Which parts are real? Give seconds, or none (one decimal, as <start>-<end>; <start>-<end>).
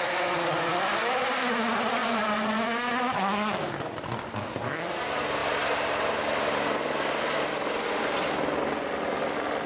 0.0-2.0; 3.0-9.7